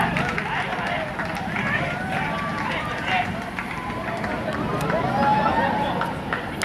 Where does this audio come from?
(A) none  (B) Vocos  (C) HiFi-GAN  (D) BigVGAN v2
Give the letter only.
A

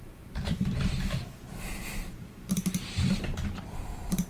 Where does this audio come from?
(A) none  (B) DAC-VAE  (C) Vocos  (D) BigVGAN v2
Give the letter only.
D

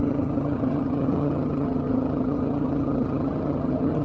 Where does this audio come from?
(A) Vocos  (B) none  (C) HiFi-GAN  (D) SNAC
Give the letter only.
C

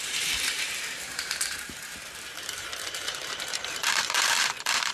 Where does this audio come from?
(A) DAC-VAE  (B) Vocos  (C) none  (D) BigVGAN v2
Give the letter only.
D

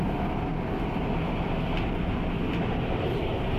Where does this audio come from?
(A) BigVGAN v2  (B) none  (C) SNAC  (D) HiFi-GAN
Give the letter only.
B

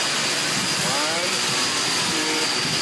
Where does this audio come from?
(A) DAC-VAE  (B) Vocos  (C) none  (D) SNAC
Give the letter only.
C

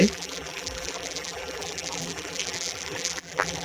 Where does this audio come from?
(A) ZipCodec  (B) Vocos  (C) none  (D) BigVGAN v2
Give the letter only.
D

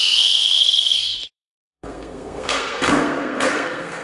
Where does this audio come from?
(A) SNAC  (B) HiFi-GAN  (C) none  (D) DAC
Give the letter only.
A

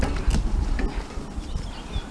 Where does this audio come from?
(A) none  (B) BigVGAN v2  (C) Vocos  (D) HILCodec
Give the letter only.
A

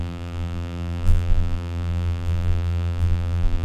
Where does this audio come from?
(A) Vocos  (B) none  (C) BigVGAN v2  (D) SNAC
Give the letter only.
C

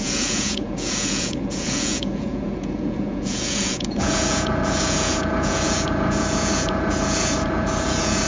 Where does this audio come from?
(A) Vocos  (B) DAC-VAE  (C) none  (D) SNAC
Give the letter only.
A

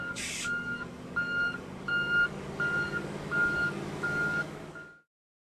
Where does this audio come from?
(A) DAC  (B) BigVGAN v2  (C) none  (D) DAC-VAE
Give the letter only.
A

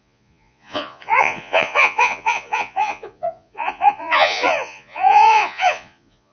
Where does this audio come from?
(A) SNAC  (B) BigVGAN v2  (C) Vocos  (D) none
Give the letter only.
C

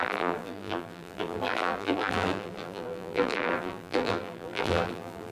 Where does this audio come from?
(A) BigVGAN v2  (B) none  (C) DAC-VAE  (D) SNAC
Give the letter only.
A